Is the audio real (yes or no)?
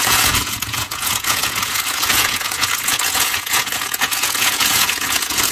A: no